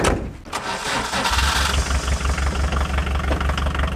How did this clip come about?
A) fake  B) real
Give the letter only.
B